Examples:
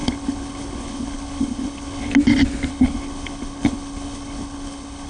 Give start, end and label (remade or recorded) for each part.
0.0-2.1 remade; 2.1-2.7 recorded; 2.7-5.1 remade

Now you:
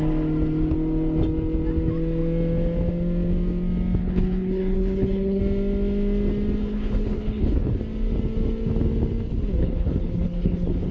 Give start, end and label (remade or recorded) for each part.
0.0-4.0 recorded; 4.0-5.4 remade; 5.4-6.6 recorded; 6.6-7.8 remade; 7.8-9.6 recorded; 9.6-10.9 remade

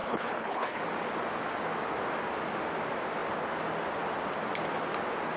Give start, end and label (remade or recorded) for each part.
0.0-0.8 remade; 0.8-5.4 recorded

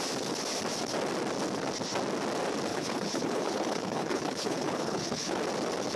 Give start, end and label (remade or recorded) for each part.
0.0-2.7 recorded; 2.7-5.4 remade; 5.4-6.0 recorded

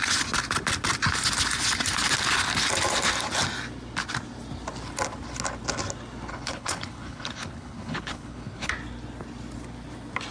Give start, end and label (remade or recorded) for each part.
0.0-6.3 recorded; 6.3-8.7 remade; 8.7-10.3 recorded

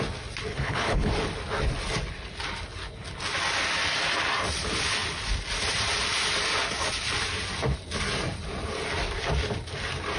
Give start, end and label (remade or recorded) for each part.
0.0-0.5 recorded; 0.5-1.1 remade; 1.1-10.2 recorded

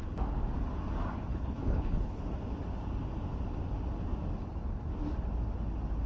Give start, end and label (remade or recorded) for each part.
0.0-1.3 recorded; 1.3-2.2 remade; 2.2-6.1 recorded